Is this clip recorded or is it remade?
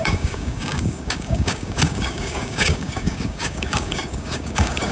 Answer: remade